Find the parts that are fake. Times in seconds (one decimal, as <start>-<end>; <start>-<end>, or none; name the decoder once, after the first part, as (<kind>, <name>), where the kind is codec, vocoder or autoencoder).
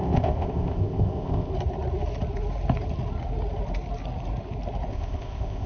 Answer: 0.0-1.5 (codec, ZipCodec); 4.9-5.7